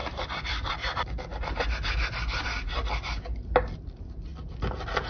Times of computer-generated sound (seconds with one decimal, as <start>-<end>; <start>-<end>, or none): 0.0-0.7; 1.3-2.8